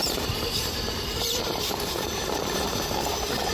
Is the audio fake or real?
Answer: fake